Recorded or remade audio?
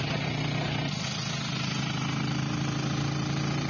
recorded